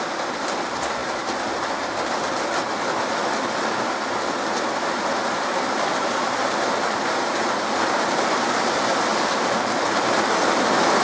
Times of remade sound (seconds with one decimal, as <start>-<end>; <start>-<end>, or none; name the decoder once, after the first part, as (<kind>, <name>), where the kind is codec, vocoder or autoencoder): 5.2-8.5 (vocoder, BigVGAN v2); 9.1-10.0